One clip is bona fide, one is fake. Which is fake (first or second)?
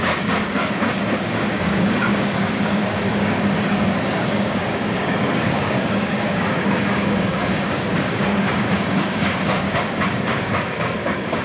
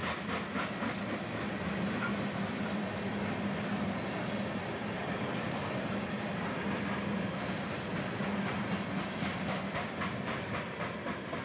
first